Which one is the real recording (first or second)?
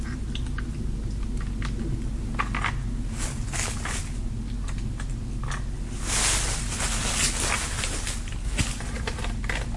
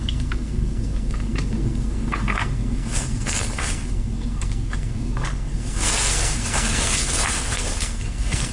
first